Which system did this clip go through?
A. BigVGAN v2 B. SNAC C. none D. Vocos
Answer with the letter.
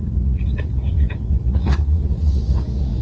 D